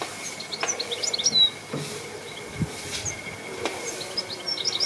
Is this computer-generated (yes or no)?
no